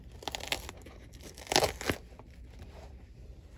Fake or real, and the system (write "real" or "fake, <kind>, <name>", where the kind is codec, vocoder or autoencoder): real